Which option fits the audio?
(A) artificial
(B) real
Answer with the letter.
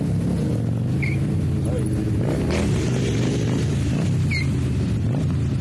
B